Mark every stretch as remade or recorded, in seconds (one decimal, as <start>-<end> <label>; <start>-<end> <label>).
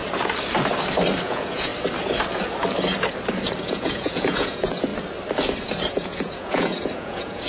0.0-1.2 recorded; 1.2-1.7 remade; 1.7-3.6 recorded; 3.6-4.9 remade; 4.9-5.9 recorded; 5.9-7.5 remade